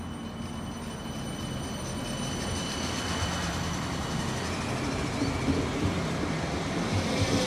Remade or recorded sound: recorded